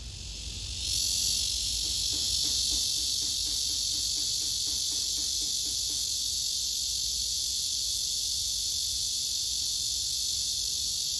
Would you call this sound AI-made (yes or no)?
no